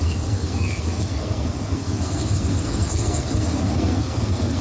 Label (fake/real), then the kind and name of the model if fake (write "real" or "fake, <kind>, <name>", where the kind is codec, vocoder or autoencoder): fake, codec, SNAC